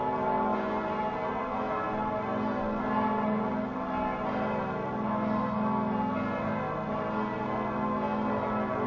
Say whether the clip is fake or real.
real